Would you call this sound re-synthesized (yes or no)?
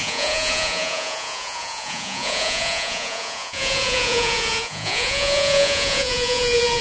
yes